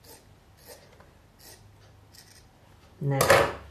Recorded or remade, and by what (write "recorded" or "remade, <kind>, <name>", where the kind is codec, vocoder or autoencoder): recorded